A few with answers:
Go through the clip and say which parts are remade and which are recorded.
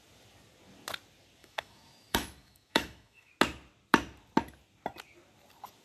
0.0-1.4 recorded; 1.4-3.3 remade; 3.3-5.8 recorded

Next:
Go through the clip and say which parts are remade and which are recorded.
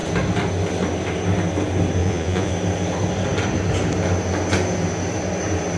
0.0-2.0 recorded; 2.0-2.5 remade; 2.5-5.8 recorded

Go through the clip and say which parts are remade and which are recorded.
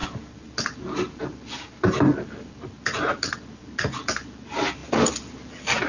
0.0-5.9 recorded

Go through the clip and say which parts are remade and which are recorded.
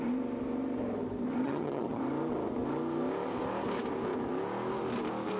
0.0-1.4 recorded; 1.4-2.0 remade; 2.0-5.4 recorded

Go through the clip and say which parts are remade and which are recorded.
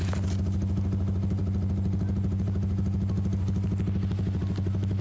0.0-5.0 recorded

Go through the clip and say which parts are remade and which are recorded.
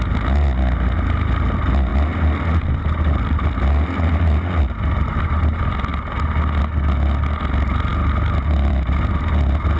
0.0-9.8 recorded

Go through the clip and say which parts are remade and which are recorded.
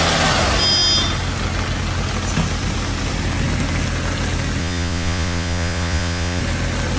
0.0-4.6 recorded; 4.6-6.4 remade; 6.4-7.0 recorded